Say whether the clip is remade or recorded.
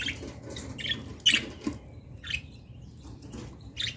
recorded